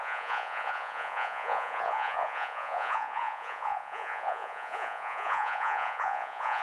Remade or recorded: remade